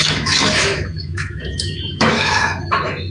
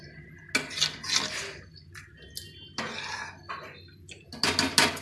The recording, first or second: second